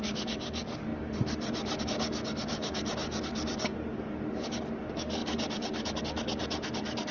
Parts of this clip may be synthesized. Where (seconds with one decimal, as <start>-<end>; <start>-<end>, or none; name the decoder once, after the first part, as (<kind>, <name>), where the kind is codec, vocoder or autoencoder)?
0.0-7.1 (codec, DAC)

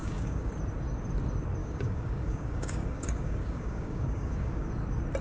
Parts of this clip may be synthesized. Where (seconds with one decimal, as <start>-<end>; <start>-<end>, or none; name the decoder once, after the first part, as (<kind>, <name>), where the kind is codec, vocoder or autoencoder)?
0.0-0.5 (codec, DAC); 1.6-4.7